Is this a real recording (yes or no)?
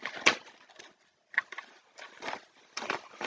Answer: yes